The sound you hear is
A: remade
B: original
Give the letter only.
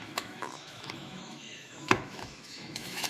A